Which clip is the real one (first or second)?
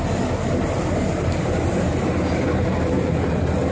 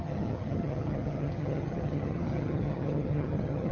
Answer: first